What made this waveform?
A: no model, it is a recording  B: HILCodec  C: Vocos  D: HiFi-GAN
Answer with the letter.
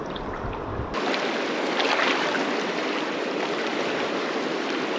A